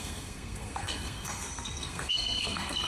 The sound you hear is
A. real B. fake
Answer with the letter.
B